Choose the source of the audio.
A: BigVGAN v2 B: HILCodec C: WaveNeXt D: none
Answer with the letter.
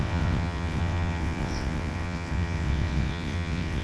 C